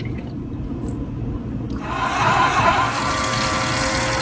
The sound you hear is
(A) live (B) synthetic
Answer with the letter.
A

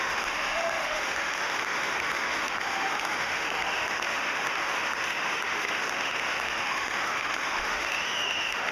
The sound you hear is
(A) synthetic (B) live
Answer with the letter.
A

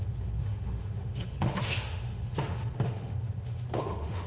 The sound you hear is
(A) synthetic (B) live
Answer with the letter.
A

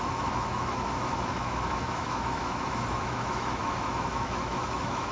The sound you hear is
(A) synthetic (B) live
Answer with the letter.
A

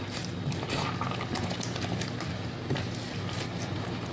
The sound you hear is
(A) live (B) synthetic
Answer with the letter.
A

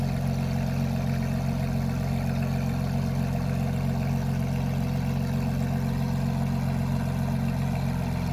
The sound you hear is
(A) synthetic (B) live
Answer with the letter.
B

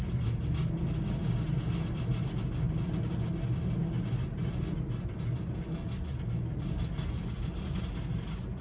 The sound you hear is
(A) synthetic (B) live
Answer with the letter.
B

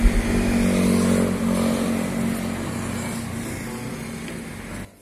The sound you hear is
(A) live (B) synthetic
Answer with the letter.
A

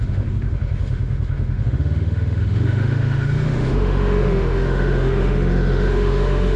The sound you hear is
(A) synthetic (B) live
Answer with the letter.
A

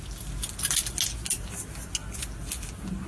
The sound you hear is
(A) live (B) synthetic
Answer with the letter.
A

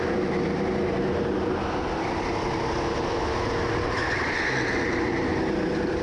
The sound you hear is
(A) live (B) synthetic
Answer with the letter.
A